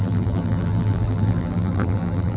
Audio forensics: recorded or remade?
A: remade